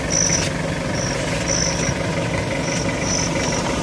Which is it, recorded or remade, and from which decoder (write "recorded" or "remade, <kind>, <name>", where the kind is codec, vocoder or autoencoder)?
recorded